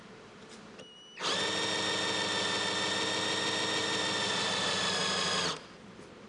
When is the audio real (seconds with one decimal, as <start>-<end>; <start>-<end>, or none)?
0.0-3.8; 4.6-5.0